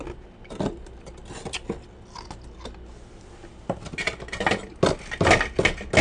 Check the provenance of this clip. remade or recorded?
recorded